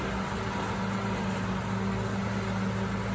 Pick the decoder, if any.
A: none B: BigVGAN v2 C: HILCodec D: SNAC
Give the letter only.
A